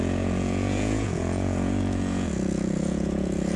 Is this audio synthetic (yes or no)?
yes